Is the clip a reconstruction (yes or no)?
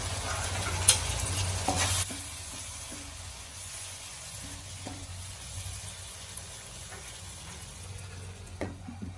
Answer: yes